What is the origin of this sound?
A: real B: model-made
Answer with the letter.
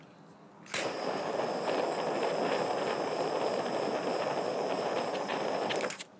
A